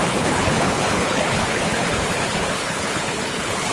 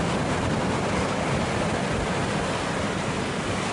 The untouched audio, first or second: second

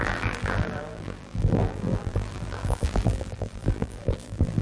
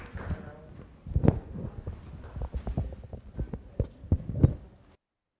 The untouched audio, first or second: second